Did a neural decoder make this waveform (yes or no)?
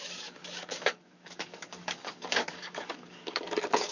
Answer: yes